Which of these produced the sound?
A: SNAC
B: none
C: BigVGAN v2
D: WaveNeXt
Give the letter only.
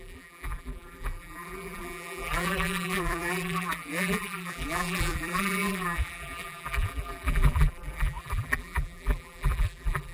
C